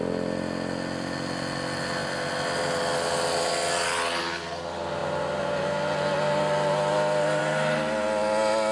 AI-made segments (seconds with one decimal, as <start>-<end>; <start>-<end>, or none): none

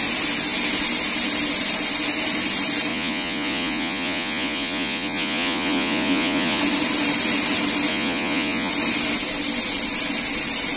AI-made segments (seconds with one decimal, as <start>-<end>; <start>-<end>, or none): 2.9-6.6; 7.9-8.7